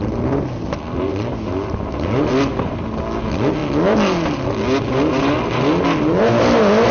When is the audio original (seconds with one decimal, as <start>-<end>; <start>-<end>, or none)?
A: 0.0-6.9